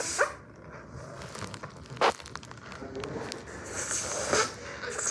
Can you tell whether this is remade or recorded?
recorded